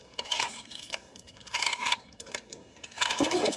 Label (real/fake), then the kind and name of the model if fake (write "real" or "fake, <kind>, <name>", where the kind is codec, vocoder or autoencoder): fake, codec, SNAC